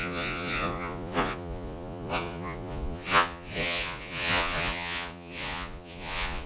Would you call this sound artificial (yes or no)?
yes